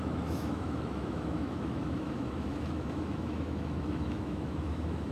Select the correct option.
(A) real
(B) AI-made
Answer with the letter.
B